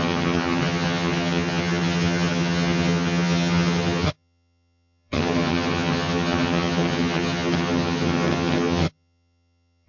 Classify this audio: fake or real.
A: fake